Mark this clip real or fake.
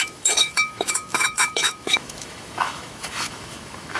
fake